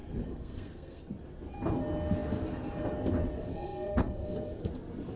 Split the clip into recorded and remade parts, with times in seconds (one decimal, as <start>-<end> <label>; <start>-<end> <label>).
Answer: 0.0-1.1 remade; 1.1-3.5 recorded; 3.5-4.7 remade; 4.7-5.2 recorded